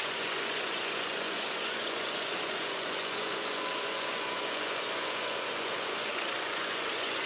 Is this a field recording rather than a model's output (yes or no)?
no